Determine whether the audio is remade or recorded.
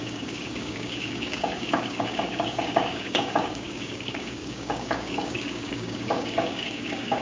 remade